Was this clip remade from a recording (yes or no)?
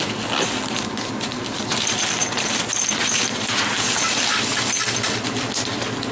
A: no